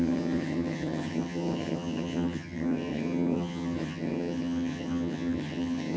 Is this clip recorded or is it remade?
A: remade